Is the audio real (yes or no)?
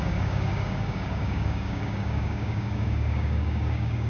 no